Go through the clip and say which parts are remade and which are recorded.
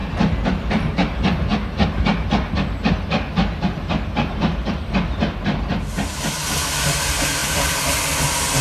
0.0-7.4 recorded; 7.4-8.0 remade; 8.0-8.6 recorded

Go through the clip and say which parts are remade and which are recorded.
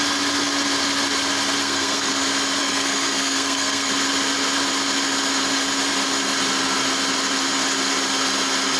0.0-1.6 recorded; 1.6-2.1 remade; 2.1-2.6 recorded; 2.6-3.9 remade; 3.9-8.8 recorded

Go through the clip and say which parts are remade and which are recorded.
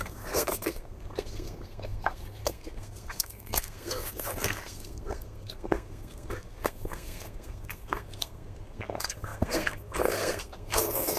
0.0-11.2 remade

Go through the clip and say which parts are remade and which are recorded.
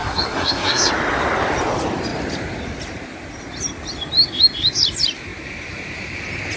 0.0-0.9 remade; 0.9-6.6 recorded